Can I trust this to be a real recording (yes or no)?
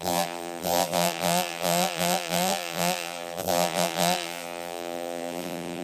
no